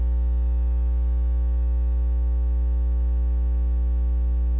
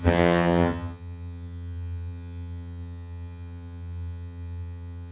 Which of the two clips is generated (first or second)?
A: second